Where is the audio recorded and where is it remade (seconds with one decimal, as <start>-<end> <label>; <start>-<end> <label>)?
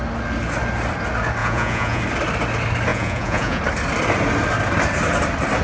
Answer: 0.0-1.4 recorded; 1.4-2.0 remade; 2.0-2.9 recorded; 2.9-3.6 remade; 3.6-5.6 recorded